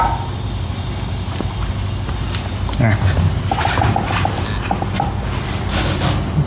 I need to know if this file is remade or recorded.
recorded